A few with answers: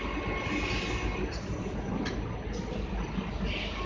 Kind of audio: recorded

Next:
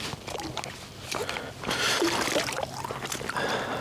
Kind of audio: recorded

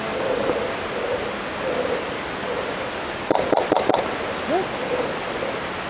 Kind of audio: recorded